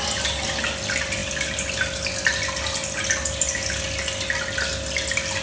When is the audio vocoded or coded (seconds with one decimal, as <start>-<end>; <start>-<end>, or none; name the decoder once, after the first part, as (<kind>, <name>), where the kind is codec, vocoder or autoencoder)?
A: none